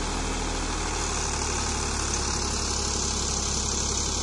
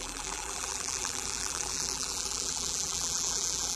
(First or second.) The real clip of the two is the first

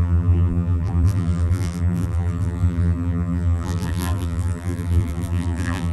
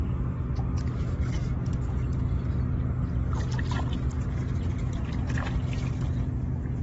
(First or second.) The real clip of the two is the second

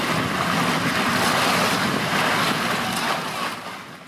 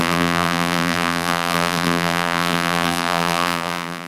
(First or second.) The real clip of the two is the first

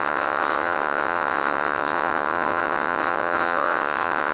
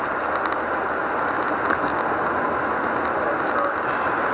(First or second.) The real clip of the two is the second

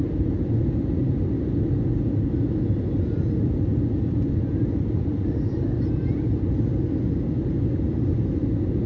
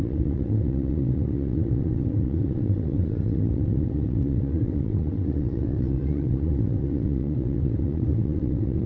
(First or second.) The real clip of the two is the first